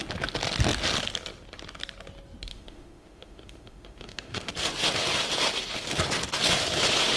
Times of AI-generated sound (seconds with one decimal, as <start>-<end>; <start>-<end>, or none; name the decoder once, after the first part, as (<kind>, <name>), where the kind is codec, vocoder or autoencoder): 2.5-4.5 (autoencoder, DAC-VAE)